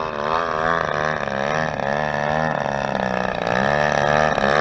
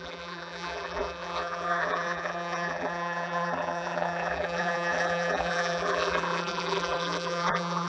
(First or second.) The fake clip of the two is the second